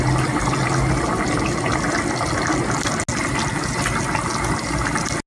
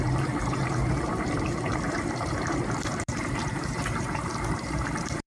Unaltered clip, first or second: first